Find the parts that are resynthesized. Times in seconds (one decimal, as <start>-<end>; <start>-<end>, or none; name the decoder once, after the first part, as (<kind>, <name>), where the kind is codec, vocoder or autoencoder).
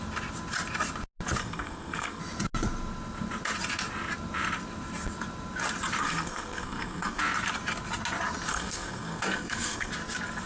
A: 1.4-2.2 (codec, SNAC); 6.0-7.2; 8.5-9.9